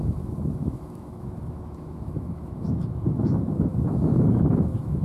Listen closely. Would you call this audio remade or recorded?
remade